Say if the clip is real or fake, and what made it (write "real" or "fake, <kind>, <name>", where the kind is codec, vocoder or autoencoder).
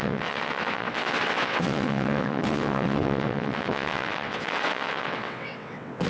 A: fake, vocoder, WaveNeXt